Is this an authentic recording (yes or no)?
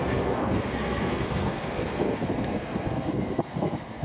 no